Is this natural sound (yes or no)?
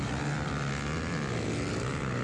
yes